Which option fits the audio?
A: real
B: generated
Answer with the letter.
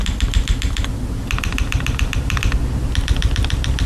A